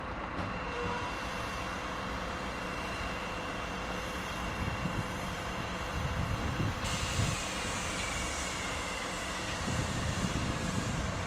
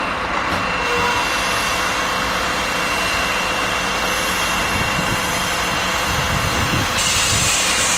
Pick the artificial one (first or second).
first